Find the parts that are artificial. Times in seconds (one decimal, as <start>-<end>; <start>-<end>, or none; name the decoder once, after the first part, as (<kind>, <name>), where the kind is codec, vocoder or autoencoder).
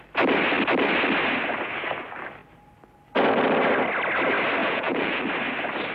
4.6-5.2 (vocoder, Vocos)